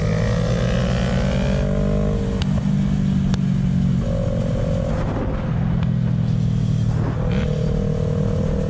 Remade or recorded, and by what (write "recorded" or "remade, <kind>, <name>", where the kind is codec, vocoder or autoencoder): recorded